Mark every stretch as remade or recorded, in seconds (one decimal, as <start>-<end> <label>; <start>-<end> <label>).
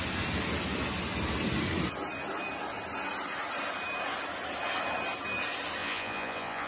0.0-5.8 recorded; 5.8-6.7 remade